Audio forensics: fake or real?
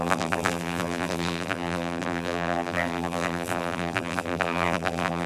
fake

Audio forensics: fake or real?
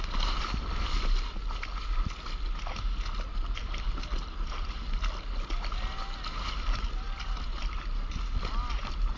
real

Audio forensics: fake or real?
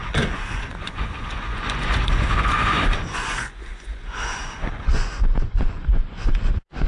fake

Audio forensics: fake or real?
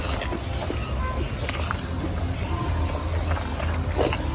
real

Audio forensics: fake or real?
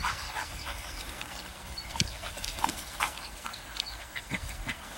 fake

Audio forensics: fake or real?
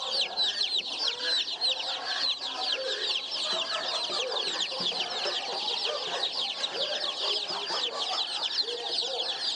real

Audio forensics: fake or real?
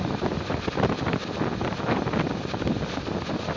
real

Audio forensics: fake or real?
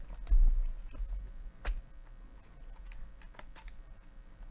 real